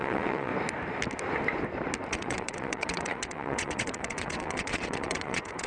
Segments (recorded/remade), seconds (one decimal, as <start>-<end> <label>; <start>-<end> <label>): 0.0-0.5 remade; 0.5-2.1 recorded; 2.1-5.7 remade